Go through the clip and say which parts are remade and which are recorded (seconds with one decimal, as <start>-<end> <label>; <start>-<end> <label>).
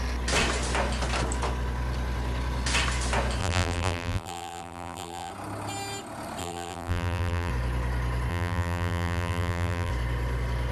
0.0-3.4 recorded; 3.4-5.3 remade; 5.3-6.4 recorded; 6.4-7.5 remade; 7.5-8.3 recorded; 8.3-9.9 remade; 9.9-10.7 recorded